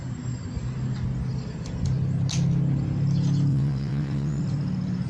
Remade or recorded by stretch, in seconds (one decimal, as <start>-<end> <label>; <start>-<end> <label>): 0.0-3.5 recorded; 3.5-4.4 remade; 4.4-5.1 recorded